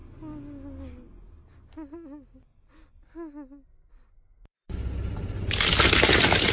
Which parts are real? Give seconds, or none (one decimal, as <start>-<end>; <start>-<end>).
0.0-6.5